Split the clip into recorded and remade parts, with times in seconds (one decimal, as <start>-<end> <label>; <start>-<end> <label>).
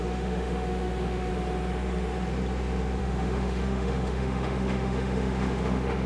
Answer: 0.0-1.3 remade; 1.3-3.0 recorded; 3.0-6.1 remade